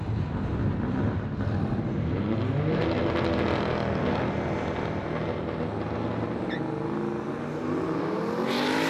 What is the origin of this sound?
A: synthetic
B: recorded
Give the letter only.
B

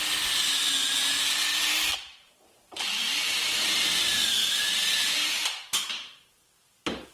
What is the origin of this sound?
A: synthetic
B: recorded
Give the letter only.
A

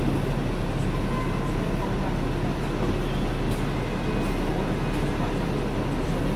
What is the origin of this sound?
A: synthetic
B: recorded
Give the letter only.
B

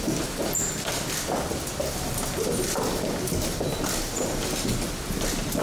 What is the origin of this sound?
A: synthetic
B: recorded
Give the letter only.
A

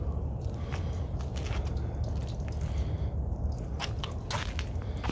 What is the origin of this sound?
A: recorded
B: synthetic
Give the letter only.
A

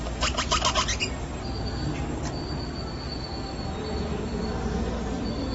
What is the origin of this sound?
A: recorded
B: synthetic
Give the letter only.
A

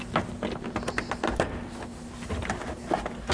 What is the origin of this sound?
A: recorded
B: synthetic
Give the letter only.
A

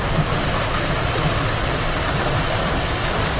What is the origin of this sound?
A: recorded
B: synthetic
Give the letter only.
A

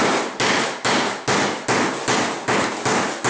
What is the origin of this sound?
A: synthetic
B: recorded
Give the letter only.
B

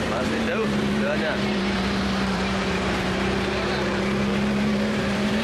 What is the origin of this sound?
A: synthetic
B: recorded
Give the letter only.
A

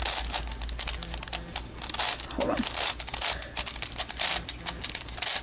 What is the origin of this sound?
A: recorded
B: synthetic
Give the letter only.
A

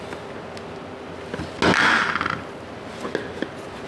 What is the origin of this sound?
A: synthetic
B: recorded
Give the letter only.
B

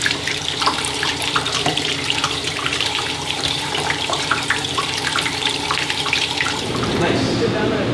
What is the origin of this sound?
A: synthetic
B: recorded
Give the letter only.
A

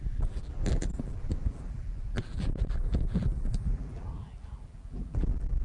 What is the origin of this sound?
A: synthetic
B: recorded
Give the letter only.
A